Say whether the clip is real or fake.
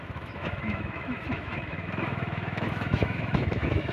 fake